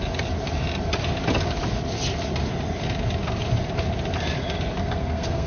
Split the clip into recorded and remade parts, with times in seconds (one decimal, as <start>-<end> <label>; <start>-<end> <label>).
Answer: 0.0-4.8 recorded; 4.8-5.5 remade